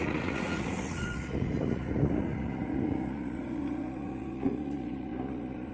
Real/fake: fake